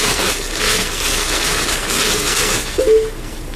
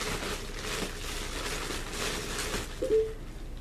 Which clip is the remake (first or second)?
first